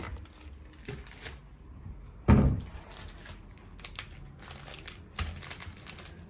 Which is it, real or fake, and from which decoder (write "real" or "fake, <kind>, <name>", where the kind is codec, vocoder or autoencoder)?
real